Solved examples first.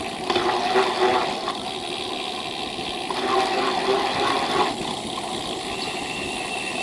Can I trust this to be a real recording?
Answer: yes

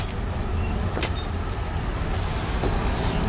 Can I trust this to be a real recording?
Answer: yes